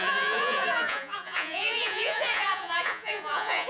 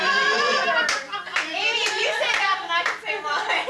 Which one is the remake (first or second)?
first